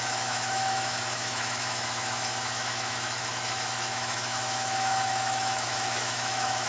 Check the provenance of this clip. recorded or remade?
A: remade